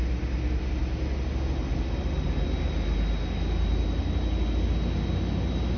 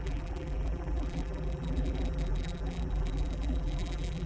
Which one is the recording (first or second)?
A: first